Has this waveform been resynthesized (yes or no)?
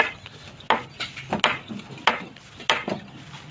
no